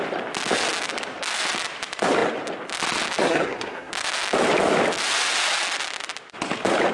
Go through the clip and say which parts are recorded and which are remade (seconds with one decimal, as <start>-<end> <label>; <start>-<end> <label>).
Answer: 0.0-3.2 recorded; 3.2-3.9 remade; 3.9-6.9 recorded